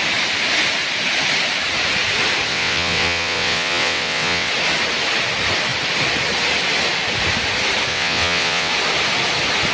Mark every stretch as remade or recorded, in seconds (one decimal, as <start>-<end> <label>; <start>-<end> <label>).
0.0-2.5 recorded; 2.5-4.5 remade; 4.5-7.9 recorded; 7.9-8.7 remade; 8.7-9.7 recorded